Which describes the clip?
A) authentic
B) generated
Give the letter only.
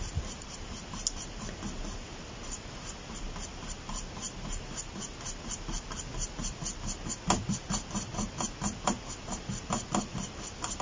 A